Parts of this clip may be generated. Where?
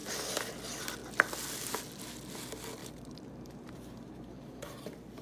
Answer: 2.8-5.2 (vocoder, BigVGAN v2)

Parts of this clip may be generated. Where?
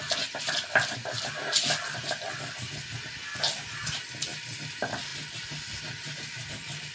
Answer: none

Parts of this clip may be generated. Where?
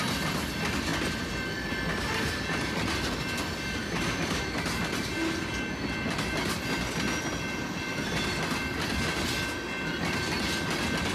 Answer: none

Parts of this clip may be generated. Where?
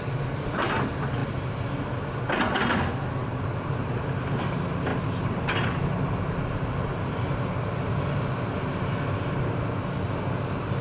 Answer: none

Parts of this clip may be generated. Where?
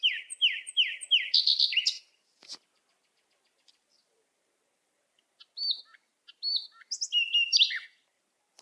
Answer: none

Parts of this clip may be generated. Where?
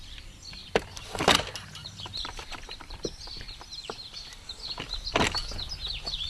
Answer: 1.8-4.7 (vocoder, BigVGAN v2)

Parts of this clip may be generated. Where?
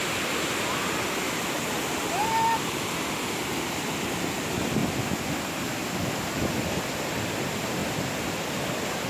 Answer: 0.0-9.1 (vocoder, BigVGAN v2)